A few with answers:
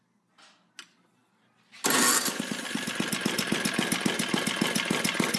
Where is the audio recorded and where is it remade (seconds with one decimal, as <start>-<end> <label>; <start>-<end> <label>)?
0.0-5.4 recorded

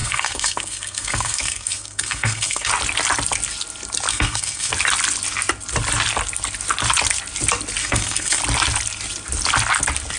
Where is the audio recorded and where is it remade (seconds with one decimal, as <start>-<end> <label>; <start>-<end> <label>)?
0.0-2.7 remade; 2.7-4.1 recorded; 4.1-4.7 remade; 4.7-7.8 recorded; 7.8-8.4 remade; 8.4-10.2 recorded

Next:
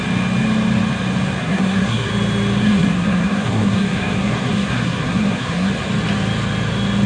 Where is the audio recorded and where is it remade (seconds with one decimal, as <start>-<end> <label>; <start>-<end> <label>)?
0.0-1.4 recorded; 1.4-2.1 remade; 2.1-2.6 recorded; 2.6-5.7 remade; 5.7-7.1 recorded

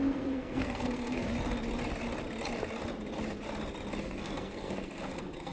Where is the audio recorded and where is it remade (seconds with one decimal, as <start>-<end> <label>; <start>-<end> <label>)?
0.0-1.3 remade; 1.3-4.0 recorded; 4.0-5.5 remade

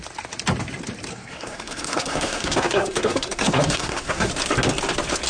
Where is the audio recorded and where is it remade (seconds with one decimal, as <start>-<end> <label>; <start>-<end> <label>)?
0.0-1.1 recorded; 1.1-4.3 remade; 4.3-5.3 recorded

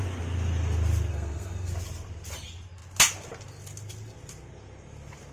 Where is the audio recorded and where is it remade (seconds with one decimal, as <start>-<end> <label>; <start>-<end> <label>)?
0.0-1.1 recorded; 1.1-1.7 remade; 1.7-5.3 recorded

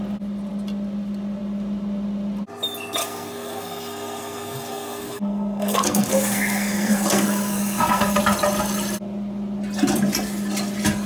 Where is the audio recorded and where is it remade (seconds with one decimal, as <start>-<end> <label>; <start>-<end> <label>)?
0.0-3.0 recorded; 3.0-8.2 remade; 8.2-11.1 recorded

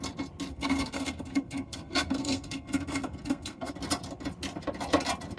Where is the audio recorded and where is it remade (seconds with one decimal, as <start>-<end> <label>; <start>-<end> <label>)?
0.0-0.5 recorded; 0.5-3.7 remade; 3.7-5.4 recorded